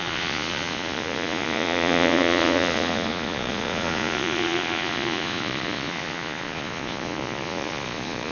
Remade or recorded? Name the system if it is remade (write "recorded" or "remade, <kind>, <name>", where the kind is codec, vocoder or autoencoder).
remade, vocoder, Vocos